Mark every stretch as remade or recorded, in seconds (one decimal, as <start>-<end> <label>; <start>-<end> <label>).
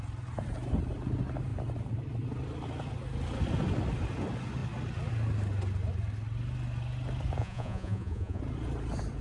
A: 0.0-7.4 recorded; 7.4-8.4 remade; 8.4-9.2 recorded